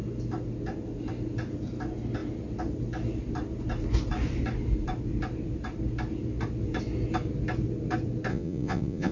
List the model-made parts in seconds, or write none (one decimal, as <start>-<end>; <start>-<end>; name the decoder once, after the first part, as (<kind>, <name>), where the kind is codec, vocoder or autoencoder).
8.3-9.1 (vocoder, Vocos)